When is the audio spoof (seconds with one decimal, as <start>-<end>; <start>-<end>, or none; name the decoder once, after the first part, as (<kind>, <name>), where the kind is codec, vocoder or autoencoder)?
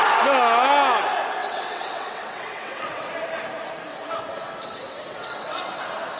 1.4-3.1 (vocoder, WaveNeXt); 3.9-5.6